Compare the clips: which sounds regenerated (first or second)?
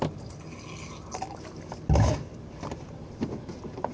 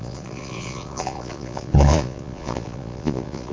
second